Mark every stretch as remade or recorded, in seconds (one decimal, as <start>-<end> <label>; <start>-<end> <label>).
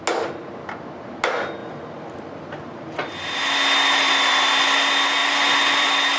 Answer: 0.0-1.6 recorded; 1.6-3.4 remade; 3.4-5.2 recorded; 5.2-6.2 remade